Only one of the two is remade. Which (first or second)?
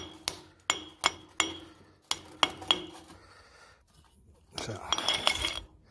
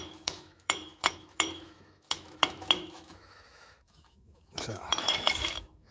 second